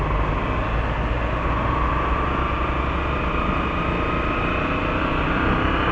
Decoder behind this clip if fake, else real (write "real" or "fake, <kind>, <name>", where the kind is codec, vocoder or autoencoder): real